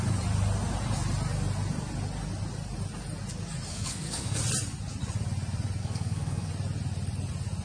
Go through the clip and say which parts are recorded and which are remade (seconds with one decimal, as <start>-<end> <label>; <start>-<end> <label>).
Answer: 0.0-3.7 recorded; 3.7-4.4 remade; 4.4-5.8 recorded; 5.8-6.5 remade; 6.5-7.6 recorded